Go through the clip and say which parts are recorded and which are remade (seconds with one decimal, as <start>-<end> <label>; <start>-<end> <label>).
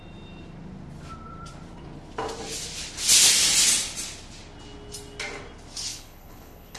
0.0-5.9 recorded; 5.9-6.8 remade